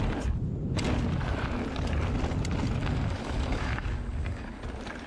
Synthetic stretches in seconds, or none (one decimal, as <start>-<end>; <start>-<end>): 2.8-4.6